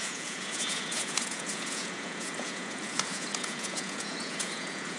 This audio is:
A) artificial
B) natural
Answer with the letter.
A